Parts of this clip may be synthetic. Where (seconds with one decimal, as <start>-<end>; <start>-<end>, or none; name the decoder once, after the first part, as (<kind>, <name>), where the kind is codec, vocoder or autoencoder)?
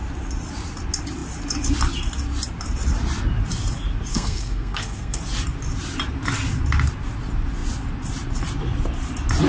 4.1-5.2 (codec, SNAC)